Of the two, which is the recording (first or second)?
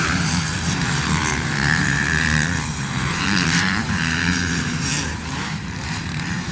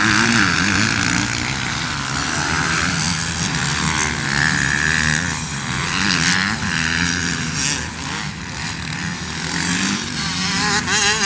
second